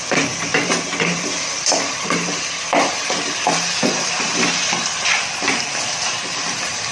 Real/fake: fake